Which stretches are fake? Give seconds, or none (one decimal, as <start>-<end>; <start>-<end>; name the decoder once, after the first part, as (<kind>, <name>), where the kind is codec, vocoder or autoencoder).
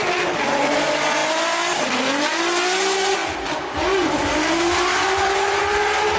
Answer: none